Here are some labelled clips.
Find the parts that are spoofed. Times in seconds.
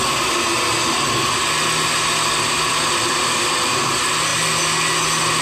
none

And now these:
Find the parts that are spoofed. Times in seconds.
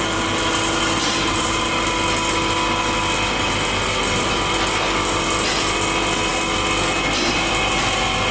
none